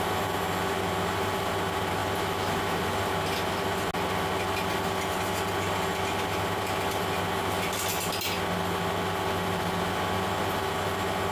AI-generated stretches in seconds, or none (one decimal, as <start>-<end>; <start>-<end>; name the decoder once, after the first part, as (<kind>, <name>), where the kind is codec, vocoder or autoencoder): none